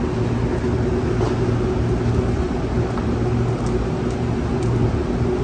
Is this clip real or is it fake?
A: real